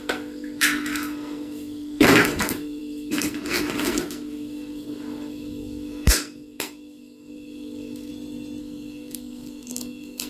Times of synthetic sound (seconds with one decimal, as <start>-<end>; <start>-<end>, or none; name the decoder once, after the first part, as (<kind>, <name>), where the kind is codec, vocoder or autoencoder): 0.0-8.1 (codec, SNAC); 8.6-10.3